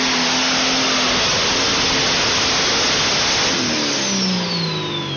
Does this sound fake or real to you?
real